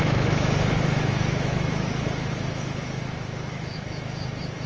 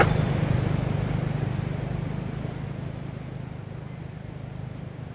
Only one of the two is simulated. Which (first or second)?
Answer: first